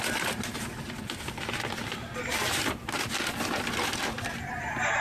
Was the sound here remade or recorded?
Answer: recorded